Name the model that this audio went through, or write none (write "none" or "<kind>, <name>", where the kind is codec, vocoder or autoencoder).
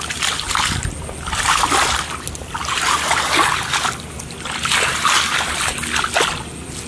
none